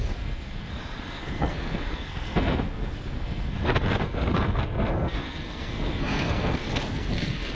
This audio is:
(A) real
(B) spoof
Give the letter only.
B